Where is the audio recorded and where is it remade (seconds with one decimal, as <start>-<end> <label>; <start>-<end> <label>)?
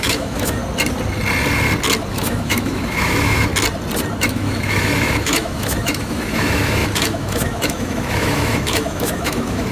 0.0-0.6 remade; 0.6-2.1 recorded; 2.1-3.5 remade; 3.5-4.2 recorded; 4.2-9.7 remade